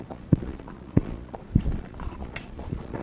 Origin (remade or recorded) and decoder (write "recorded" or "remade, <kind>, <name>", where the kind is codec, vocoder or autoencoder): remade, vocoder, Vocos